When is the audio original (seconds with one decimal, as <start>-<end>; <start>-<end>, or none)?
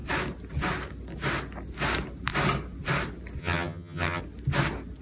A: 0.0-3.4; 4.2-5.0